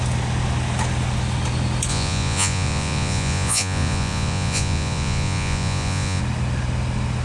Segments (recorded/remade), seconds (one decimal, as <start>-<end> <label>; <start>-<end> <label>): 0.0-1.9 recorded; 1.9-6.2 remade; 6.2-7.2 recorded